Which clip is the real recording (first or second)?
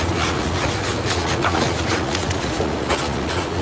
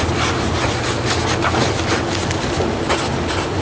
second